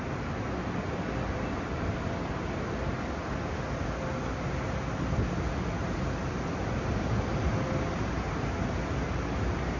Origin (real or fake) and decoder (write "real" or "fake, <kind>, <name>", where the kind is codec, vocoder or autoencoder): real